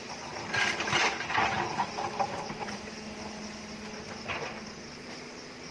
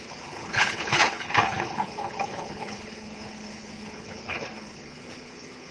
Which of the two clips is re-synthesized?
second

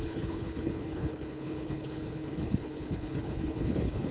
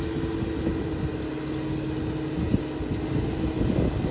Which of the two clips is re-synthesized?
first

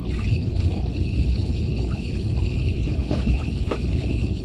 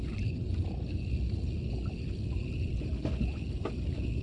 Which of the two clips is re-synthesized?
first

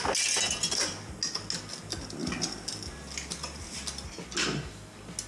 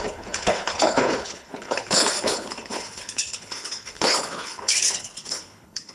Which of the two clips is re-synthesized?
second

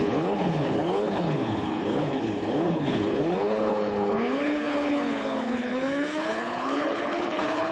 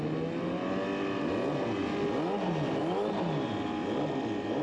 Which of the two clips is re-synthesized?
first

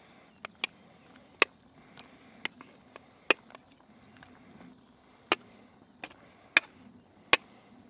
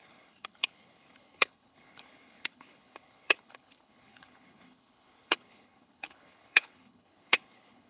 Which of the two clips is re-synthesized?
second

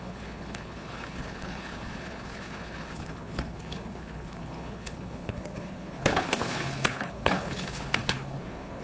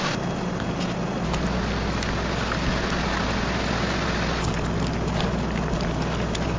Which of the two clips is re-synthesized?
first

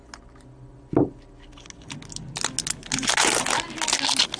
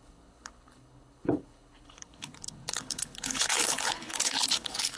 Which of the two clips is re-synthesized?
second